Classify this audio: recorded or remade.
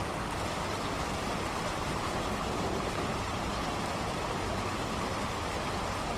recorded